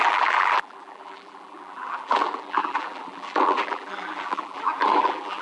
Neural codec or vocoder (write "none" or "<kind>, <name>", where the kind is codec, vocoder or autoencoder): vocoder, BigVGAN v2